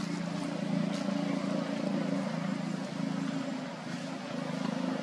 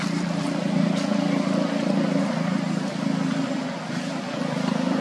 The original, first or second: first